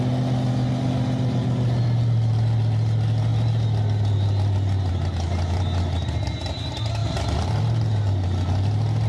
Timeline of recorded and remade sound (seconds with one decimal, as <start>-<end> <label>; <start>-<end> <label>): 0.0-7.0 recorded; 7.0-7.6 remade; 7.6-9.1 recorded